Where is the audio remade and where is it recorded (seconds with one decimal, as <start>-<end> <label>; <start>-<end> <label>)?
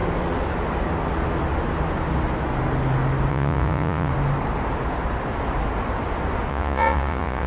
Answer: 0.0-3.3 recorded; 3.3-4.1 remade; 4.1-6.5 recorded; 6.5-7.5 remade